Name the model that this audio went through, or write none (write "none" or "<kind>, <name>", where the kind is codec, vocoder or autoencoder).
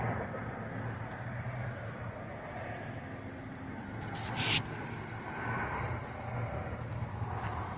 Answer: none